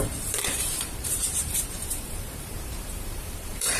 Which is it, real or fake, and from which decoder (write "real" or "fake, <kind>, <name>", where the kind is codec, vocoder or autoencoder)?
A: fake, vocoder, BigVGAN v2